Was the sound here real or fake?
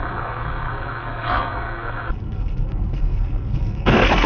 fake